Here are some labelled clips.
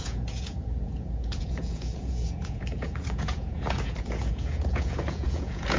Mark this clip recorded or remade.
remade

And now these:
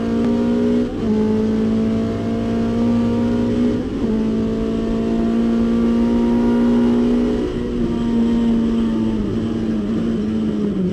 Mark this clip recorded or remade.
recorded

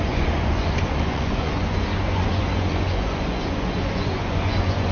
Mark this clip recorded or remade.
remade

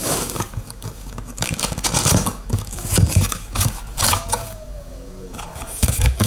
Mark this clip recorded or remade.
remade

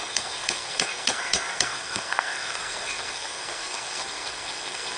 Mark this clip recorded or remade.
remade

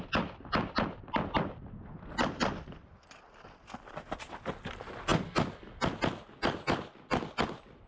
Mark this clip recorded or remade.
recorded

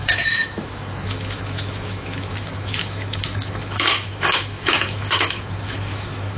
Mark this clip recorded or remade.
remade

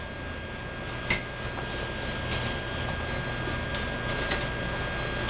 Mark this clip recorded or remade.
recorded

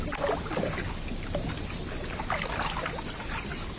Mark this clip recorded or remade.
recorded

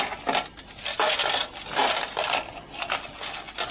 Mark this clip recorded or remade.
recorded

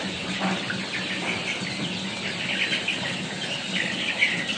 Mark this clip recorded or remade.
recorded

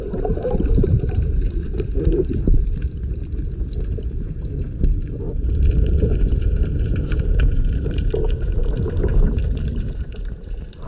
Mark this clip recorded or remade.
remade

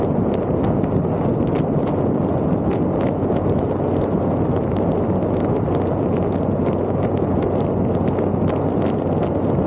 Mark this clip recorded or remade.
recorded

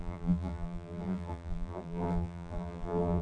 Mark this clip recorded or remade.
remade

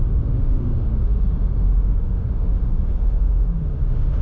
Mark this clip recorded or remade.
remade